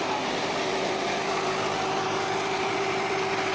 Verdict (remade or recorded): remade